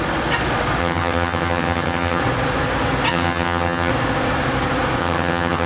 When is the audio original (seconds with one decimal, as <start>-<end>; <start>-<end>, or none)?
0.0-0.8; 2.2-3.1; 3.9-5.0